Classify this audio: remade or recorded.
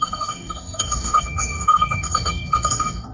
remade